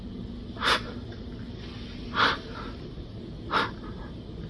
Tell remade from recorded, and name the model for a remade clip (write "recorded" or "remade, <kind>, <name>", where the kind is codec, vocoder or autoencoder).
recorded